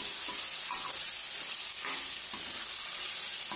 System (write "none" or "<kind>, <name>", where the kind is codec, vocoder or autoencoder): none